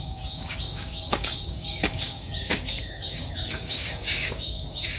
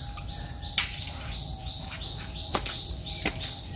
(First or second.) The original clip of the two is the second